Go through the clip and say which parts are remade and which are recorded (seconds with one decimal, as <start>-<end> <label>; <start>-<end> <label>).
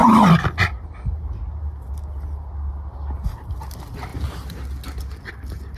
0.0-5.8 recorded